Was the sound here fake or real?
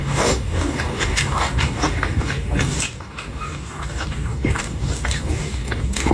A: fake